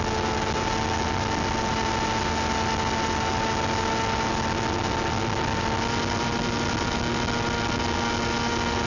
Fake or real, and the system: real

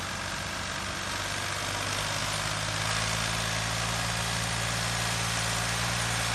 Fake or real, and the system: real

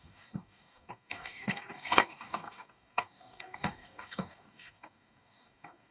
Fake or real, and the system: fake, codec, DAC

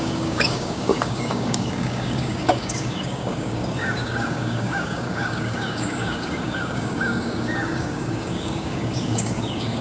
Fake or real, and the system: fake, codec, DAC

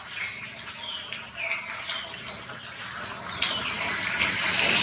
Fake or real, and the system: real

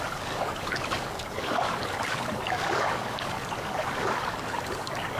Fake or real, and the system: fake, codec, DAC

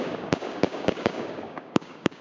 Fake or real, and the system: fake, codec, DAC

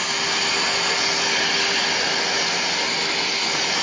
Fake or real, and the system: real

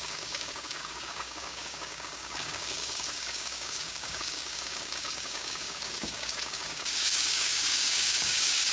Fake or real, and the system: fake, codec, DAC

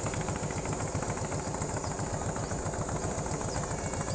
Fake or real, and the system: real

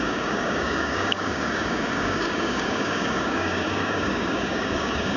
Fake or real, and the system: fake, codec, DAC